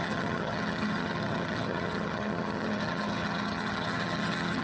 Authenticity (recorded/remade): remade